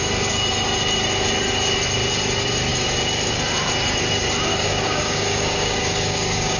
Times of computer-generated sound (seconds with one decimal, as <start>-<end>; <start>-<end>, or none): 4.5-6.6